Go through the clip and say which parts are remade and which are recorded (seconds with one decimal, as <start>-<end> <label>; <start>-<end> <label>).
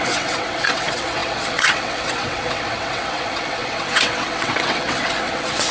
0.0-5.7 remade